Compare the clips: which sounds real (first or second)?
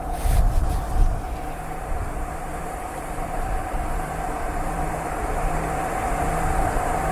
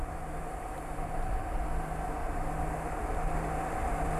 second